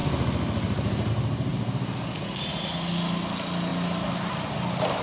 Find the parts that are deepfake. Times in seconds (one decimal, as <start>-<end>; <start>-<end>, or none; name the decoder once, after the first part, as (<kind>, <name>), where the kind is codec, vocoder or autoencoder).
1.5-2.2 (vocoder, BigVGAN v2)